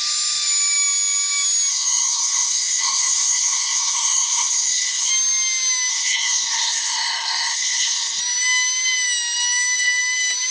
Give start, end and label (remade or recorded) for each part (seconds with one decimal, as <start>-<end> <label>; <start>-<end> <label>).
0.0-1.7 recorded; 1.7-5.1 remade; 5.1-5.9 recorded; 5.9-8.2 remade; 8.2-10.5 recorded